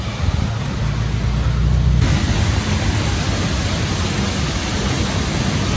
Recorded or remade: recorded